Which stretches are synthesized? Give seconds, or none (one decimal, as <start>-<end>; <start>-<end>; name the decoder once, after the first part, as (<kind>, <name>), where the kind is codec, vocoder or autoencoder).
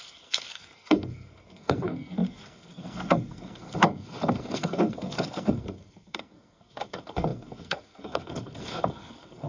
0.0-9.5 (codec, SNAC)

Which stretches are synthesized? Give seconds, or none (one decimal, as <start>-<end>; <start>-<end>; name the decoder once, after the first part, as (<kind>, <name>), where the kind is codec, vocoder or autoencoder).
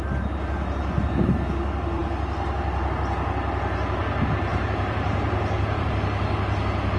4.5-5.9 (vocoder, BigVGAN v2)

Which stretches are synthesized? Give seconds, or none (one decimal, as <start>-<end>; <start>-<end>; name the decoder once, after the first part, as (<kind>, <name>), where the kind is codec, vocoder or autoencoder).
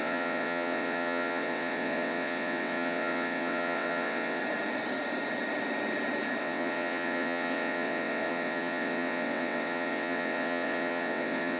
0.0-4.4 (vocoder, WaveNeXt); 6.4-11.6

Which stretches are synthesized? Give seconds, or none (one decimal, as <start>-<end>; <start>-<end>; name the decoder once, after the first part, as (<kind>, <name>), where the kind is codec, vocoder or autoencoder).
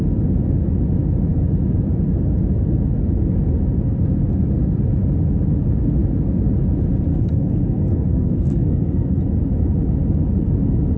7.1-9.2 (codec, SNAC)